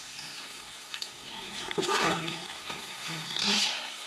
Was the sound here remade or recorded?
remade